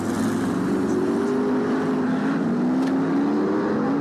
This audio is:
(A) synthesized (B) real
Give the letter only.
B